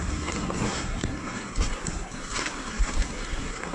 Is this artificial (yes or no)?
yes